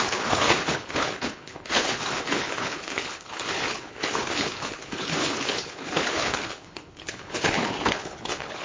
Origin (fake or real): fake